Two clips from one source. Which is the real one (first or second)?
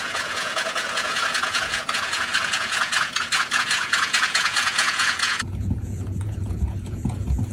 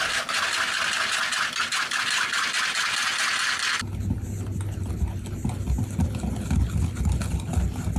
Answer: second